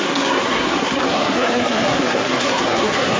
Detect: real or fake fake